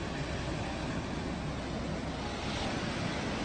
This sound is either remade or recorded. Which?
recorded